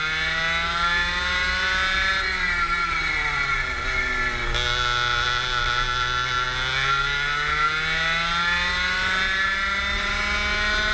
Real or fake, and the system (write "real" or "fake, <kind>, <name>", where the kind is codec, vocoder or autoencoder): real